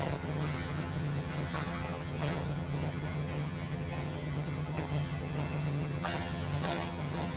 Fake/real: fake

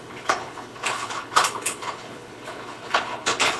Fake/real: fake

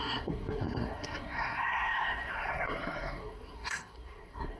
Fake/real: fake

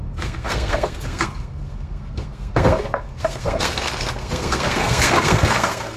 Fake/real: fake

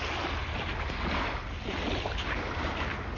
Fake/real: real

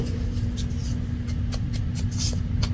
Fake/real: real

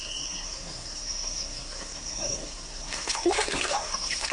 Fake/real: fake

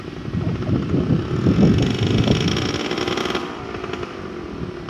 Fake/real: real